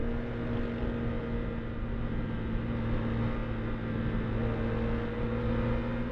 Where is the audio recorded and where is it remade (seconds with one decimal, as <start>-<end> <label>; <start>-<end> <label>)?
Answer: 0.0-6.1 recorded